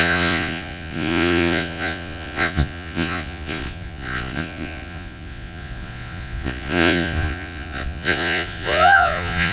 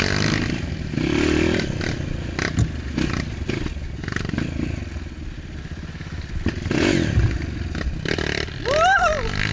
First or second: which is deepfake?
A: first